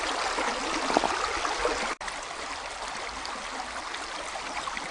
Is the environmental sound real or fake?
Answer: real